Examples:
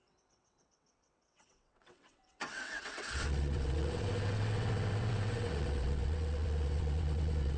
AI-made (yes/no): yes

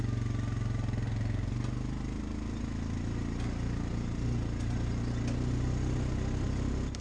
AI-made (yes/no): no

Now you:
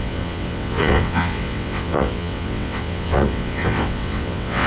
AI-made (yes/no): yes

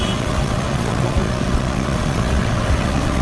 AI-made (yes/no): yes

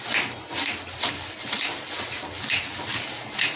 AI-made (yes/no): no